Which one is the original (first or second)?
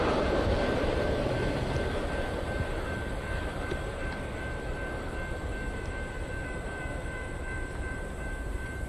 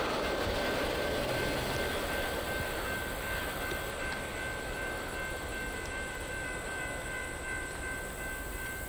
second